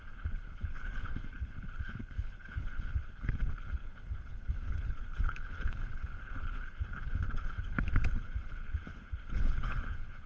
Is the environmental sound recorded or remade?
remade